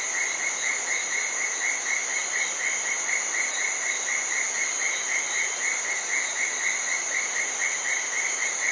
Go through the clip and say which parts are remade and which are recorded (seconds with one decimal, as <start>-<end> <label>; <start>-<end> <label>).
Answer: 0.0-8.7 recorded